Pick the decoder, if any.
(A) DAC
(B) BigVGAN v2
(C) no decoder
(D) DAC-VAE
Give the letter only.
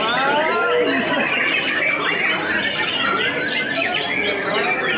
C